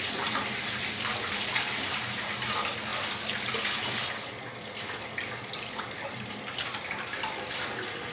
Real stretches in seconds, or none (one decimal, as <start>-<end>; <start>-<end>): 0.0-8.1

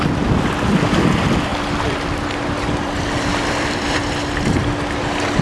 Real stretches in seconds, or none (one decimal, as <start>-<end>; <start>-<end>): 0.0-1.5; 4.7-5.4

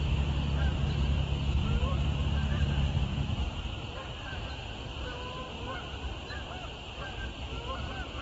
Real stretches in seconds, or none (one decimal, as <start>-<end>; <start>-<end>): 0.0-0.7; 4.3-5.9; 6.7-8.2

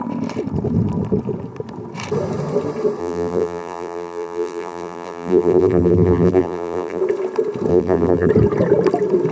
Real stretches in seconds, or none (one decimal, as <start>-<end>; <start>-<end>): 0.0-3.0; 7.0-7.7; 8.3-9.3

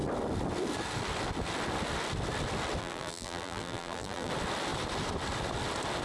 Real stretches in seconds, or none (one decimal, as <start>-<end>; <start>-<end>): 0.0-2.8; 4.3-6.0